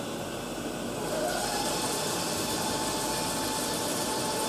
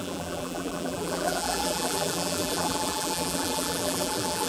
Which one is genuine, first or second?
first